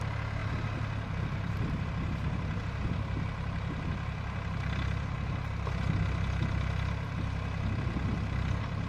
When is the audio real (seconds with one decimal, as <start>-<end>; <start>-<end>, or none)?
0.0-8.9